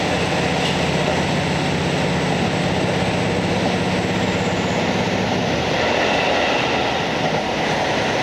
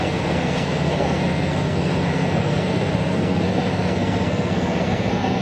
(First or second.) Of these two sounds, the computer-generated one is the second